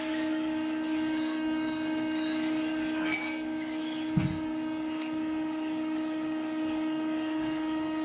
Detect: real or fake fake